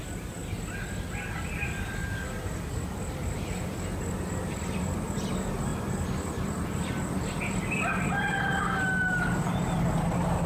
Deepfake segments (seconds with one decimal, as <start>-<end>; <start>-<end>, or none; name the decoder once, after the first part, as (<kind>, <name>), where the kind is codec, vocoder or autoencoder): none